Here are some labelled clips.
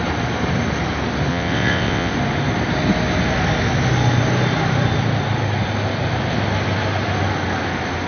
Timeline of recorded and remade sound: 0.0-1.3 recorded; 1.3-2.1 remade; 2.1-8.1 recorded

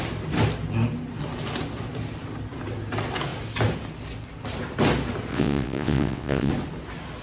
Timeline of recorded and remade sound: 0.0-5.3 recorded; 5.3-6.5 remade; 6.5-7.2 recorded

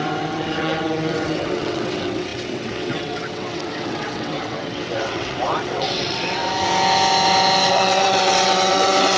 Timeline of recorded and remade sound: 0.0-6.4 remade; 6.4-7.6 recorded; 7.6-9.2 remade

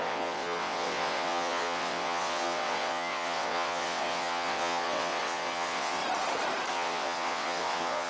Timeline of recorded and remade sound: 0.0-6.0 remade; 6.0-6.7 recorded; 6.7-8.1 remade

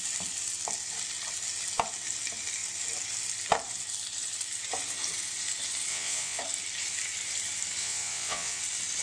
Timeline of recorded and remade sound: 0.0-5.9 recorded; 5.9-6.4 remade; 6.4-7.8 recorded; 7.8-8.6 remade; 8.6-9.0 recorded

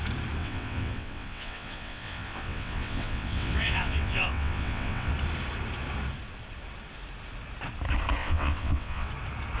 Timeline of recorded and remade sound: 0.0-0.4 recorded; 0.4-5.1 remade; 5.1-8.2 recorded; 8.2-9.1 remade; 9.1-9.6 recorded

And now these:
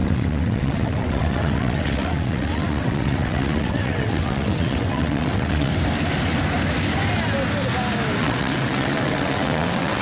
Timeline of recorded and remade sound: 0.0-5.7 remade; 5.7-8.2 recorded; 8.2-10.0 remade